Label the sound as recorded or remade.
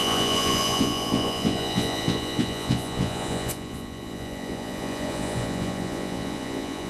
remade